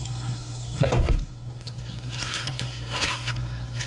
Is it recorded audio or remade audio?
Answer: remade